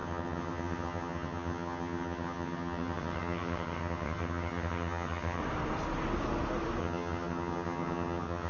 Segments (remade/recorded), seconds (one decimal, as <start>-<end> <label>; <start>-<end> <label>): 0.0-5.4 remade; 5.4-6.8 recorded; 6.8-8.5 remade